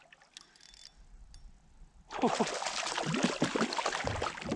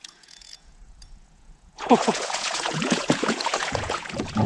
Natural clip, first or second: first